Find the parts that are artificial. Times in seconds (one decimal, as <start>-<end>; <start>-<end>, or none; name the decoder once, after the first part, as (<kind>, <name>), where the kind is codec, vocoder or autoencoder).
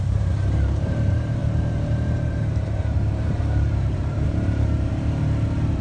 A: 0.0-5.8 (vocoder, BigVGAN v2)